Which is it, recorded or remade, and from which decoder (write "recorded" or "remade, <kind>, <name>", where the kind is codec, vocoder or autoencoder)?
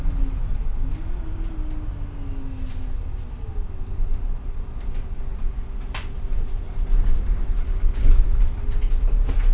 recorded